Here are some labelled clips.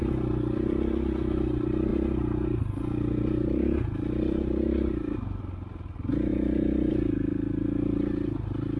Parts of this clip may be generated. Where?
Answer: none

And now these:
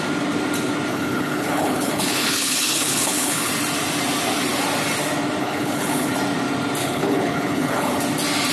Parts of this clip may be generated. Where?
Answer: 0.9-3.5; 5.4-6.1; 6.8-8.0